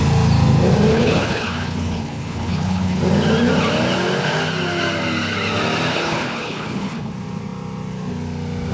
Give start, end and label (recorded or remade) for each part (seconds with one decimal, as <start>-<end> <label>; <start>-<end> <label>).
0.0-0.9 recorded; 0.9-3.0 remade; 3.0-5.9 recorded; 5.9-7.1 remade; 7.1-8.7 recorded